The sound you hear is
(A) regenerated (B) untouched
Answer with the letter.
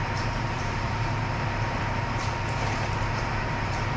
A